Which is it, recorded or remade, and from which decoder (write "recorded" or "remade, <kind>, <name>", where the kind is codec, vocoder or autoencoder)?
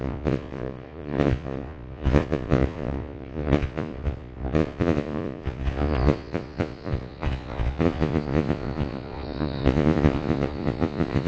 remade, vocoder, Vocos